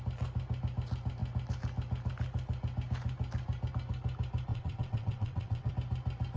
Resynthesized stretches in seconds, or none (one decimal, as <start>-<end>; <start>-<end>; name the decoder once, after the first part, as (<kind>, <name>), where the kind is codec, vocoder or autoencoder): 4.5-5.7 (vocoder, WaveNeXt)